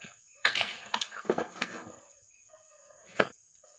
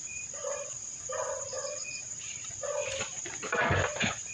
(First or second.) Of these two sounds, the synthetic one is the first